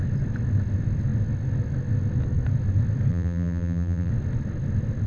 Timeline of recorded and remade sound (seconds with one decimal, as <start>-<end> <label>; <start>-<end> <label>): 0.0-3.1 recorded; 3.1-4.1 remade; 4.1-5.1 recorded